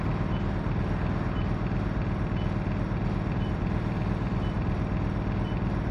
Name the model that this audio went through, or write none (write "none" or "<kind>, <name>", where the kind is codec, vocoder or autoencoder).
none